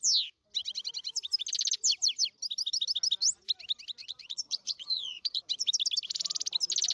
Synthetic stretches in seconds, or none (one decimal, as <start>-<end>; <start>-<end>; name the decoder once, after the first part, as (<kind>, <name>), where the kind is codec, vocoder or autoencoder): 4.0-5.4 (vocoder, Vocos)